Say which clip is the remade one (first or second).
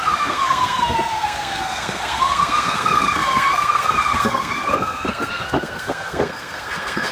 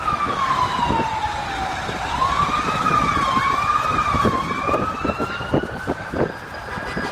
first